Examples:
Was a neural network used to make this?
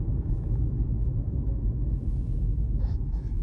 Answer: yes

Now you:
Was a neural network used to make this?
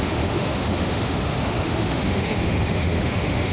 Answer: yes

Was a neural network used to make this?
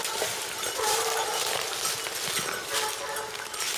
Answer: no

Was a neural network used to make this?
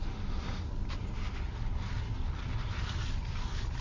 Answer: no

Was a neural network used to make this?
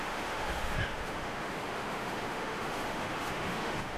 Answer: yes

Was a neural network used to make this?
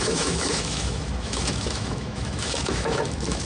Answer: yes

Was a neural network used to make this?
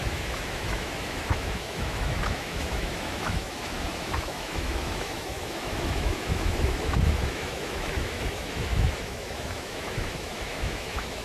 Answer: yes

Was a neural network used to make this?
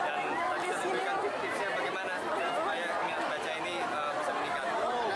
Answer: no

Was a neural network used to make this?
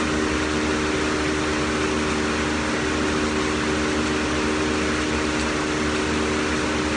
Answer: no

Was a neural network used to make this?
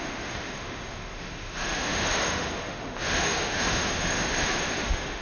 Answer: yes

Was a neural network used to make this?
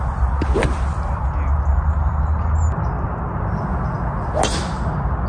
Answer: no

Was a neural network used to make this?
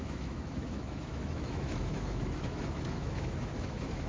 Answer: yes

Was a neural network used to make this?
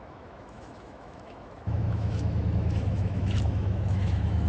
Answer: yes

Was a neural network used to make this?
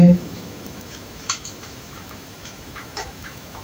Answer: yes